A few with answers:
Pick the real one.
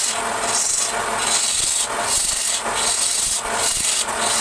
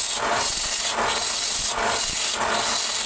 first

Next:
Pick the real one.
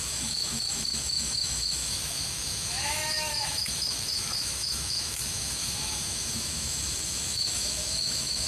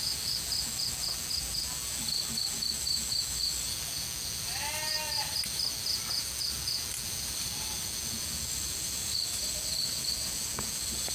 second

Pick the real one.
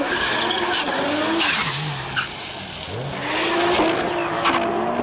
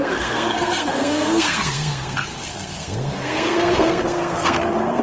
first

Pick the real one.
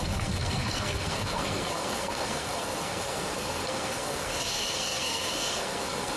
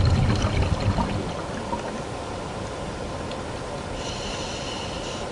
second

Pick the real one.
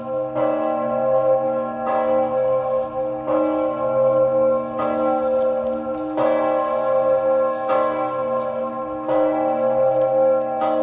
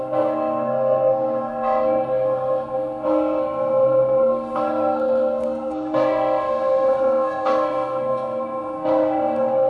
first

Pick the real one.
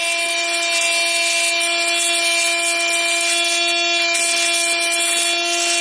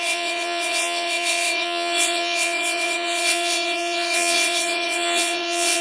first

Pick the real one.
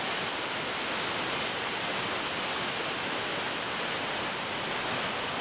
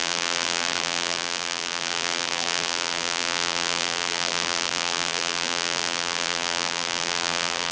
first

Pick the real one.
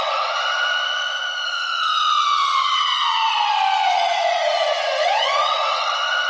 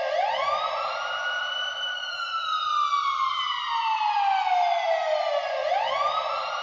second